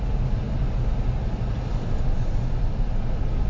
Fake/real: real